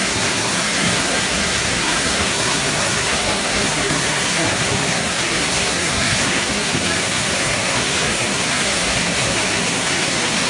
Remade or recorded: remade